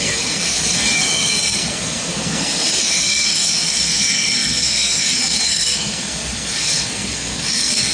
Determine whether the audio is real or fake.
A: fake